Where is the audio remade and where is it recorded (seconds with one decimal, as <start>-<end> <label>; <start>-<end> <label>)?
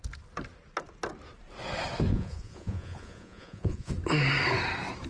0.0-2.1 recorded; 2.1-3.9 remade; 3.9-5.1 recorded